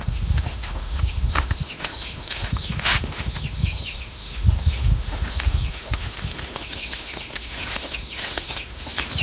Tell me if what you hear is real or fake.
fake